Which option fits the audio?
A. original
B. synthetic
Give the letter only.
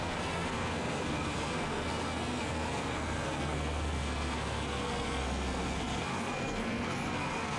B